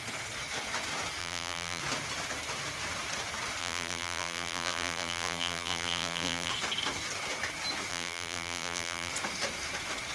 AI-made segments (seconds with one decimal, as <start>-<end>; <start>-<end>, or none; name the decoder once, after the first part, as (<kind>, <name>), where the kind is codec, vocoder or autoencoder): 1.2-1.8 (vocoder, BigVGAN v2); 3.6-6.5; 7.9-9.1